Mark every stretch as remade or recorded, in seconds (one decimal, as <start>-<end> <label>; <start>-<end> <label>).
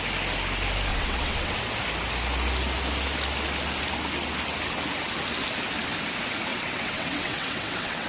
0.0-0.9 recorded; 0.9-1.6 remade; 1.6-6.5 recorded; 6.5-8.1 remade